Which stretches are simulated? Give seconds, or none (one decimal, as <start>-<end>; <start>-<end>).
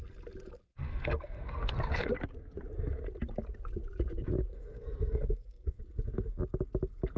0.7-2.1; 4.5-5.8